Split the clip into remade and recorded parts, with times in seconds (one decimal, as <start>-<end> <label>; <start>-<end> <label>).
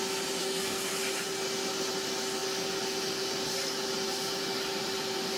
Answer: 0.0-0.4 recorded; 0.4-0.9 remade; 0.9-5.4 recorded